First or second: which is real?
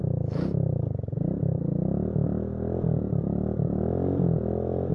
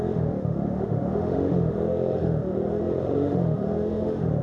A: first